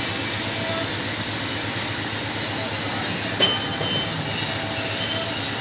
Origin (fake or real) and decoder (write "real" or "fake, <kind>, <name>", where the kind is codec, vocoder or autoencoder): real